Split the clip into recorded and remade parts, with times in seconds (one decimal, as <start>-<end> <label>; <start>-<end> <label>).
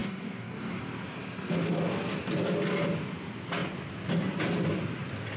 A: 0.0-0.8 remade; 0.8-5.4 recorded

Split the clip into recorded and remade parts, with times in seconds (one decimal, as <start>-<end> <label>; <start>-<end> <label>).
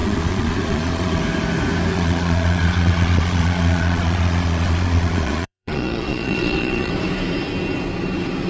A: 0.0-1.2 remade; 1.2-1.9 recorded; 1.9-6.9 remade; 6.9-8.5 recorded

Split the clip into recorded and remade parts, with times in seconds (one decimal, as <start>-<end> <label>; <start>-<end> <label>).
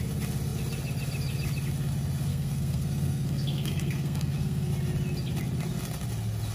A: 0.0-2.3 recorded; 2.3-4.7 remade; 4.7-6.5 recorded